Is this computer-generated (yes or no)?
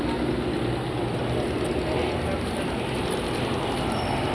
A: no